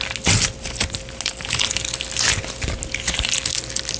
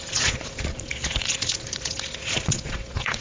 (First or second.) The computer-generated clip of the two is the second